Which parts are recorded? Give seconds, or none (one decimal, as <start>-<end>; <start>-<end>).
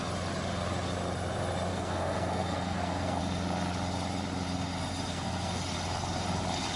0.0-1.7; 3.2-5.1; 5.6-6.8